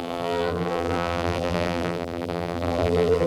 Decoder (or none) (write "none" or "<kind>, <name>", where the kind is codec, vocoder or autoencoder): vocoder, BigVGAN v2